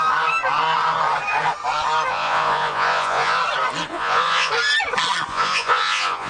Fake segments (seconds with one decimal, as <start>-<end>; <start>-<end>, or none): 2.1-3.4; 3.9-4.5; 5.3-6.3